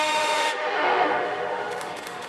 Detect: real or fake fake